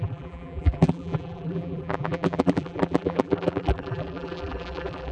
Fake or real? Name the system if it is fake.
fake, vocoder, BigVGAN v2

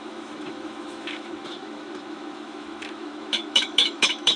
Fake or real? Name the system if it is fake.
fake, autoencoder, DAC-VAE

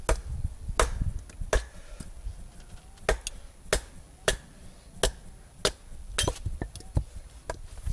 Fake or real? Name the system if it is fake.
real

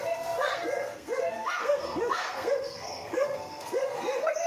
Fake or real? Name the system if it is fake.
fake, codec, SNAC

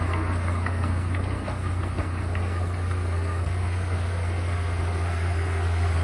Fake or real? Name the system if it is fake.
fake, codec, SNAC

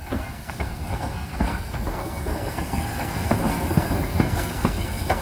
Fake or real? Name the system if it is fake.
fake, codec, SNAC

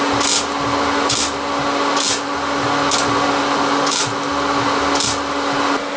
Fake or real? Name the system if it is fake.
real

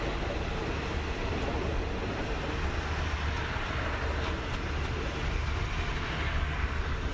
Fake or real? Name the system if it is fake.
real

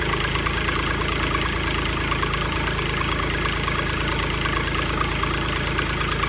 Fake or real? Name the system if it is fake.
real